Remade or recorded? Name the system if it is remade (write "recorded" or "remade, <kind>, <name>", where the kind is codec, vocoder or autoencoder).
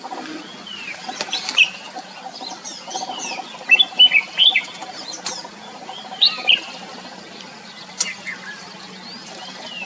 recorded